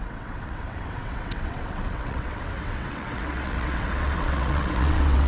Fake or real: fake